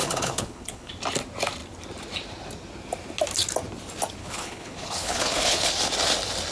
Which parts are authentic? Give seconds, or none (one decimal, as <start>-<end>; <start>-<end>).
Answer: 0.9-4.2; 5.7-6.5